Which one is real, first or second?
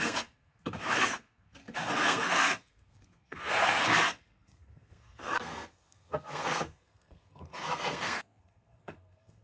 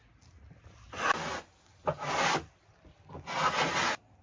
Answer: second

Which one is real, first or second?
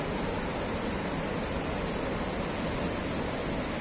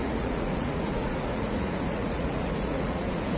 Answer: first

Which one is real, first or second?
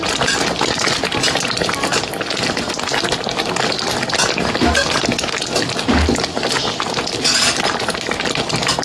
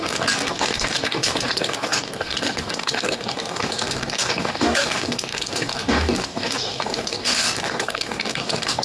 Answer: first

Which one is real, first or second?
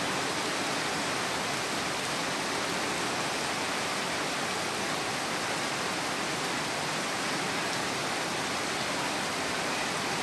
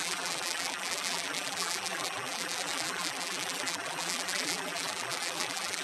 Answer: first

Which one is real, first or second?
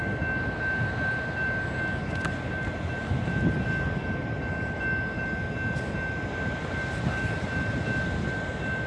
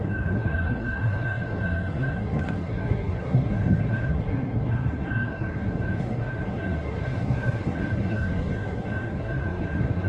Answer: first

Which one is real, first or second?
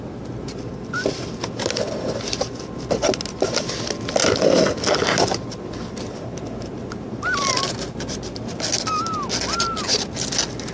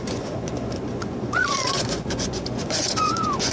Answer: first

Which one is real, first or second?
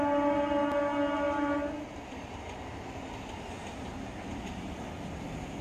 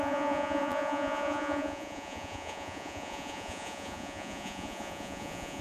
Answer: first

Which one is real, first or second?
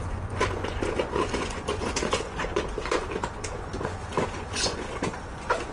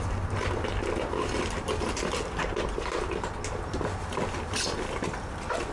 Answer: second